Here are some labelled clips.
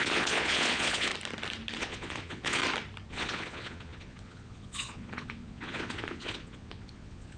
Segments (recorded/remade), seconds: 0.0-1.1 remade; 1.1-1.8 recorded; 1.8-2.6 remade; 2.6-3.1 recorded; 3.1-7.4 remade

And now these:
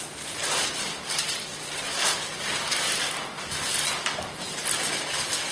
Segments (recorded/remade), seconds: 0.0-5.5 recorded

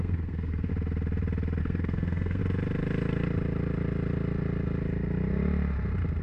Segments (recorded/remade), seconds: 0.0-0.7 remade; 0.7-1.6 recorded; 1.6-2.4 remade; 2.4-6.2 recorded

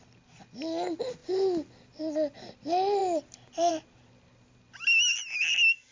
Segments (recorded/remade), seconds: 0.0-5.9 recorded

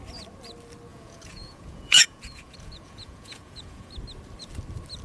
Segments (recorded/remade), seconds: 0.0-0.9 recorded; 0.9-3.9 remade; 3.9-5.0 recorded